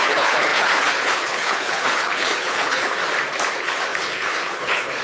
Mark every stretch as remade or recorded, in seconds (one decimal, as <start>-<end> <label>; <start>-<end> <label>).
0.0-3.0 remade; 3.0-3.5 recorded; 3.5-5.0 remade